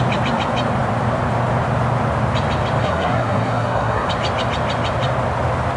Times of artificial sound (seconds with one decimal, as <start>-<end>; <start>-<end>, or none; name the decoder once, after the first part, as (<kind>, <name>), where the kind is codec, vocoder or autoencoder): 2.8-4.1 (codec, SNAC)